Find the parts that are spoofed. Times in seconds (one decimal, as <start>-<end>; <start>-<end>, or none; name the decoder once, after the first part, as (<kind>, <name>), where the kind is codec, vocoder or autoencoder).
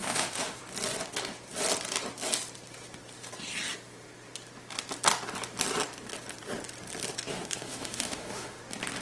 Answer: 0.0-0.6 (autoencoder, DAC-VAE); 7.3-8.6